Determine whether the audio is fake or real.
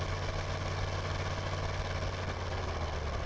real